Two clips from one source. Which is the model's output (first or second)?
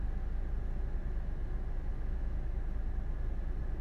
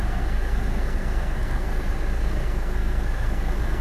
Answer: second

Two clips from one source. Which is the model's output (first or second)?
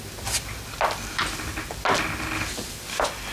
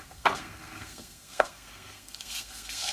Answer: second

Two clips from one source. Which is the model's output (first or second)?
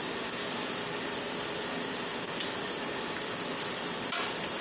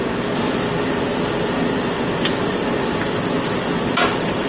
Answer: first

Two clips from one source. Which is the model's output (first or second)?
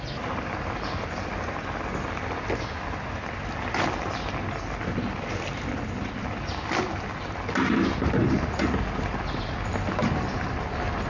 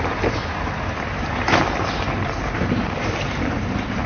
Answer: second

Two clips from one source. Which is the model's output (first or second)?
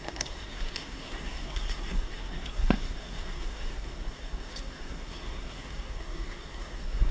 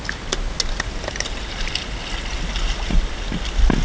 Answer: first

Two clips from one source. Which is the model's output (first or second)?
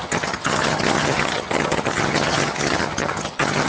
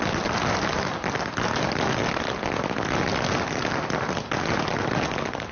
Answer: first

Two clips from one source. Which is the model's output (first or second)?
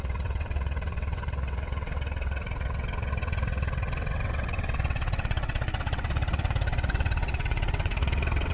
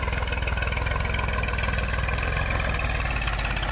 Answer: first